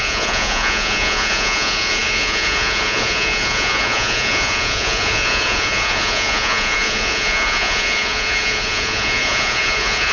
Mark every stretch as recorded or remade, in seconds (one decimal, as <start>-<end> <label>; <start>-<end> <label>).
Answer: 0.0-10.1 remade